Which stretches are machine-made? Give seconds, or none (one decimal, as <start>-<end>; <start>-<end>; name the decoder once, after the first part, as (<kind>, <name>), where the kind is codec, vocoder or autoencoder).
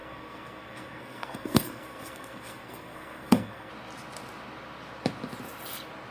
0.0-3.7 (codec, SNAC)